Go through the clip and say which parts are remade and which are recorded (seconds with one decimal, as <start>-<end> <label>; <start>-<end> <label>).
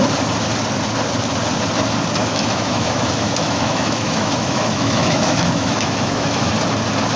0.0-2.2 recorded; 2.2-6.5 remade; 6.5-7.2 recorded